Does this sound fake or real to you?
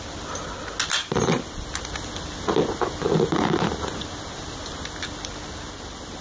real